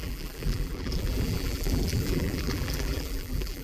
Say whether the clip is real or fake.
fake